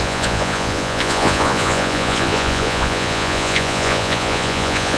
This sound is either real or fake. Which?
fake